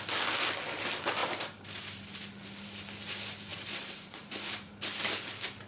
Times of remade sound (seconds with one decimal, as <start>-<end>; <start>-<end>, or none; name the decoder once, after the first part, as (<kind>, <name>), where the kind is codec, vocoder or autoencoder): 1.2-2.2 (vocoder, BigVGAN v2); 3.5-4.7